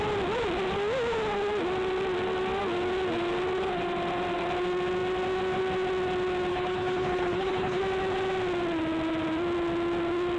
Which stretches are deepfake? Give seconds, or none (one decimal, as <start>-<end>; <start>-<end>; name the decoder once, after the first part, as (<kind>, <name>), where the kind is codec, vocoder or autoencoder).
6.5-7.8 (codec, HILCodec)